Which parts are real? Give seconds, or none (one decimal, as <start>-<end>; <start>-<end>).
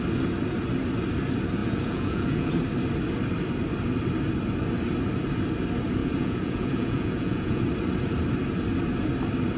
0.0-1.6; 2.5-6.0; 7.6-9.6